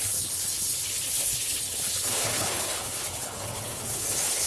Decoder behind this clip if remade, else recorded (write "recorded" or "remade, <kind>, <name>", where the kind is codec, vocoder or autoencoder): remade, codec, HILCodec